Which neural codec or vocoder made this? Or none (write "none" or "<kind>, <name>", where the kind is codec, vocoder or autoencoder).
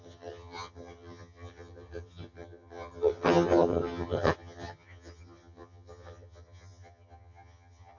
vocoder, HiFi-GAN